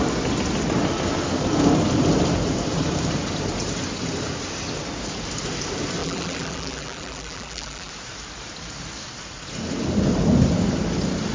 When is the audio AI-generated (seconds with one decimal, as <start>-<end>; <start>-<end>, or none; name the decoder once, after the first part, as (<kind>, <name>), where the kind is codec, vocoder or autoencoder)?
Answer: 6.0-7.9 (vocoder, BigVGAN v2)